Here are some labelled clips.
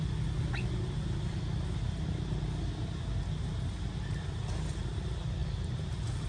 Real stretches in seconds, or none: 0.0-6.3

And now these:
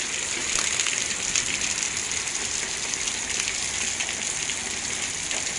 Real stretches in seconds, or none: 0.0-5.6

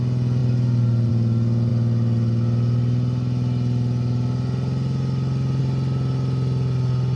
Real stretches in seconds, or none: 0.0-7.2

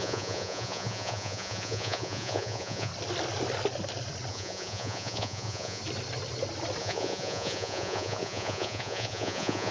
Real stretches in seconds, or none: 2.9-4.3; 5.8-6.8

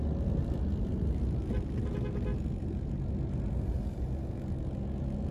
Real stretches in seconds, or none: 0.0-5.3

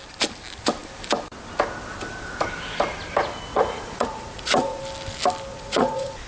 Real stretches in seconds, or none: 0.0-3.5; 4.8-5.5

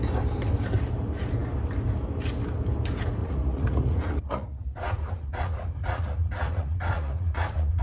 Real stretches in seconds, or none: 0.0-3.2

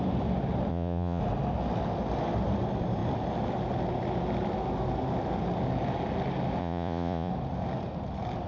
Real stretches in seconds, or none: 0.0-0.7; 1.2-6.6; 7.3-8.5